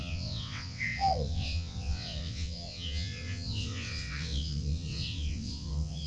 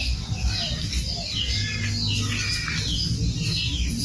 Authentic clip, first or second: second